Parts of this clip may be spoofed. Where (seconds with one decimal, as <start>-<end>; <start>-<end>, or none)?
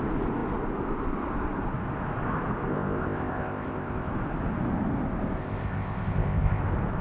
2.7-4.1; 5.4-6.6